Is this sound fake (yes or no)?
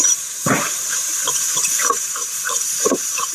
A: yes